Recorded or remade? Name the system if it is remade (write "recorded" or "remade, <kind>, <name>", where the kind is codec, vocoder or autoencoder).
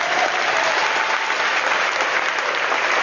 recorded